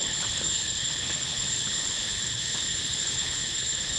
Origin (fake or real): fake